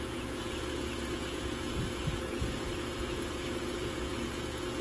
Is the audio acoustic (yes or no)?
no